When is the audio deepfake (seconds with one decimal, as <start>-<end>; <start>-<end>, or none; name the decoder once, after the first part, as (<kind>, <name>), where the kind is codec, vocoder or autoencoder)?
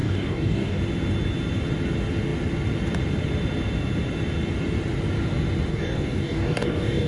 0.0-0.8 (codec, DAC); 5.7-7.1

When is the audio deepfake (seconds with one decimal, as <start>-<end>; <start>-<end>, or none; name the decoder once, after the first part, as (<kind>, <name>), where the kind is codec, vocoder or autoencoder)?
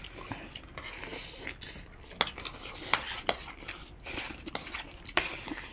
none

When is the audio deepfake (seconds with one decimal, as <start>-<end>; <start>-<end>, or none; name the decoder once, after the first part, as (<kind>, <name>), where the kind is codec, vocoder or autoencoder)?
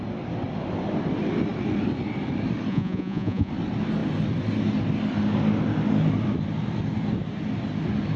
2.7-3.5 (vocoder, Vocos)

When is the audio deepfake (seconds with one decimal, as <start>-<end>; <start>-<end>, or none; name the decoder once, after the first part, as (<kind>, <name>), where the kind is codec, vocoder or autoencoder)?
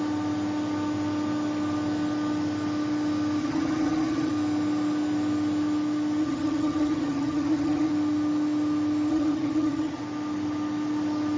3.4-4.3 (vocoder, HiFi-GAN); 6.2-7.9; 9.1-10.0